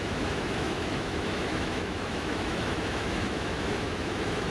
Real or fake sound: fake